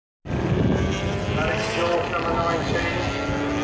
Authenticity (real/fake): real